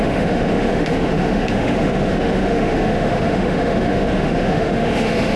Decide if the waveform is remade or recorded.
remade